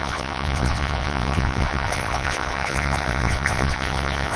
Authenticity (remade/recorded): remade